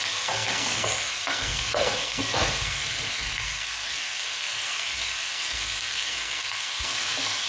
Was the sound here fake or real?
fake